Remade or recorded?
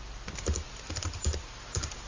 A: recorded